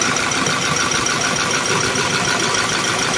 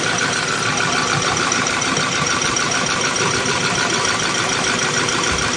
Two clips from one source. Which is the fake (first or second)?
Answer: second